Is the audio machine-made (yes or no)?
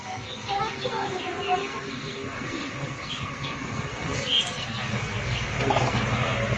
yes